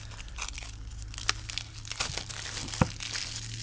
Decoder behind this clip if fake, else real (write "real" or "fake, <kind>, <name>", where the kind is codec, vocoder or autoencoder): real